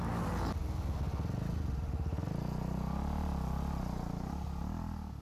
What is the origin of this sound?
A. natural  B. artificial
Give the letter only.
A